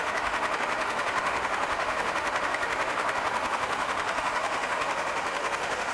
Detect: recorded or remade remade